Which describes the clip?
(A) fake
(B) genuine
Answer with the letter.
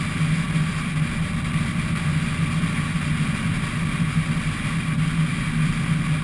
B